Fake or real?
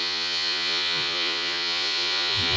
fake